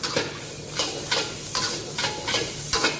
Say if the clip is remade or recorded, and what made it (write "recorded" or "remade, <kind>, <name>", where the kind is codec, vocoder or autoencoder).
recorded